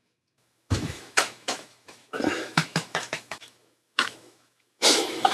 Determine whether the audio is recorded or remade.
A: remade